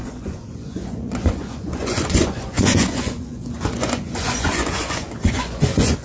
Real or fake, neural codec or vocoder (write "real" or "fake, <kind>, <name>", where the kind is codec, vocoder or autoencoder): fake, vocoder, Vocos